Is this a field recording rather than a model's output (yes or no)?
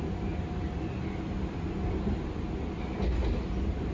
yes